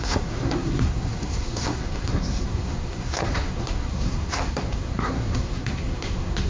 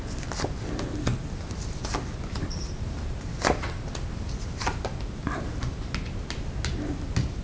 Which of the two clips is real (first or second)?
second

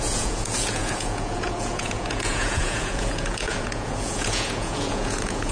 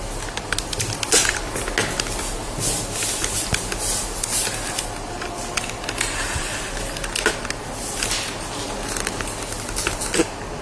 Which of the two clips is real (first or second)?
second